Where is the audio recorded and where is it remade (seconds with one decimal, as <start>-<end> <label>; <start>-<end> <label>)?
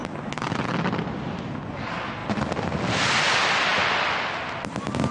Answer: 0.0-5.1 recorded